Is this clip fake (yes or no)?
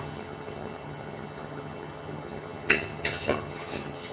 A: yes